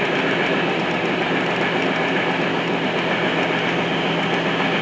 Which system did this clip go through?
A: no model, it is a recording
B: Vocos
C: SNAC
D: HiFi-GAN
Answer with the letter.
A